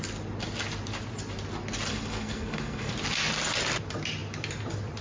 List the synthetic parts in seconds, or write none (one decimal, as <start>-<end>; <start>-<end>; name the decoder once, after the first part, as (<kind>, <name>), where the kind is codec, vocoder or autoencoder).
1.9-2.9 (codec, SNAC)